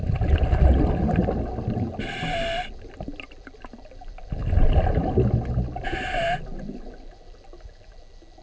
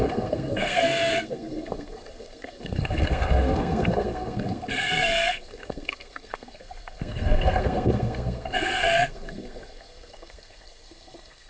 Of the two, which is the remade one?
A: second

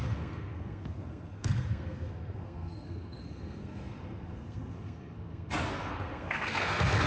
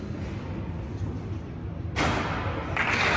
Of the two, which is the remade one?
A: first